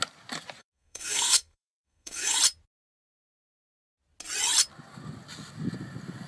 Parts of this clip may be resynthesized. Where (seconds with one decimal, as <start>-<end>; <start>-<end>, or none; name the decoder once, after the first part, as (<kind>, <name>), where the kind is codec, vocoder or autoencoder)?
0.6-2.4 (codec, SNAC)